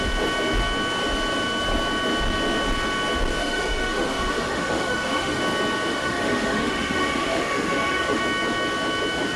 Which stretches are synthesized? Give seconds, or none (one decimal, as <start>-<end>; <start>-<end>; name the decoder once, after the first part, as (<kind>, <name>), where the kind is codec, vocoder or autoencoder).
3.4-5.4 (autoencoder, DAC-VAE); 5.9-8.2